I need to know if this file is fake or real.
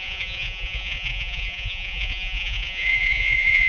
fake